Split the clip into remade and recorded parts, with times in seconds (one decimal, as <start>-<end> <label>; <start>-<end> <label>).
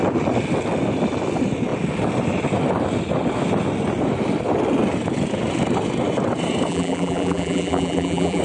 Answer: 0.0-6.7 recorded; 6.7-8.4 remade